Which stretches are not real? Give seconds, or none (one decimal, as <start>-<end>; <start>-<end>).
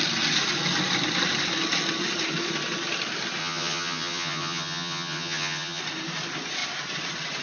3.4-5.8